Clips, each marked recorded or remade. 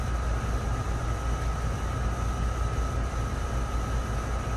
recorded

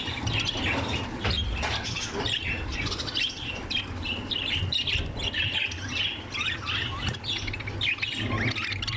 recorded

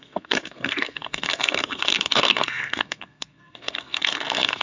remade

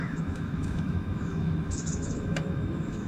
remade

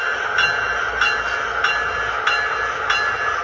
recorded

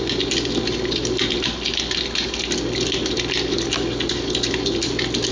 recorded